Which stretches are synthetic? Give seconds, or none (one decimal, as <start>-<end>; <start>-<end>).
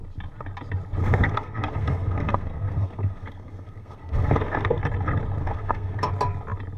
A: 1.0-4.8; 5.4-6.1